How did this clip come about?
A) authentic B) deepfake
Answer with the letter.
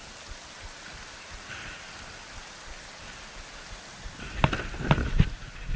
A